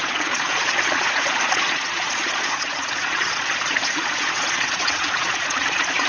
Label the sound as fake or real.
fake